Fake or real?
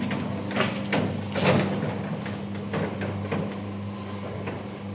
real